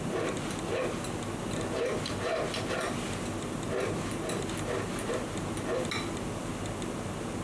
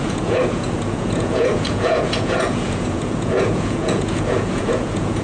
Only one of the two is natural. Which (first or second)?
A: first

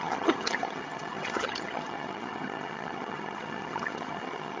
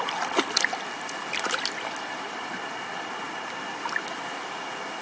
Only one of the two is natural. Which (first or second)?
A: second